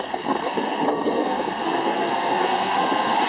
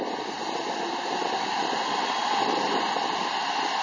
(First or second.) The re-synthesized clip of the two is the first